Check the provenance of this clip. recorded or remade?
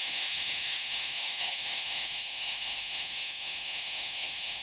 remade